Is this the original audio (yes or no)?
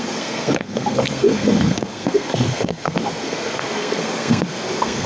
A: no